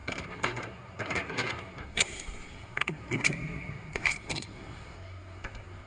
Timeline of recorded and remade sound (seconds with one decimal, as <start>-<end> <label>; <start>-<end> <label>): 0.0-5.9 remade